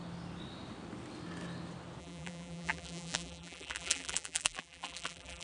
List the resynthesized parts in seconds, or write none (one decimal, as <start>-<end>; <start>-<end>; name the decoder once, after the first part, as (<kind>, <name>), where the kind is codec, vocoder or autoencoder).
2.0-5.4 (vocoder, BigVGAN v2)